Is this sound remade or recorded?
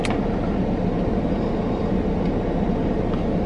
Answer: recorded